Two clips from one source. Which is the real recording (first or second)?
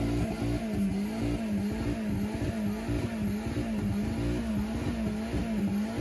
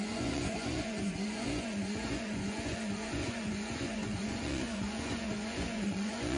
first